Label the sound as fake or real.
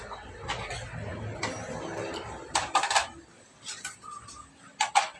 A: real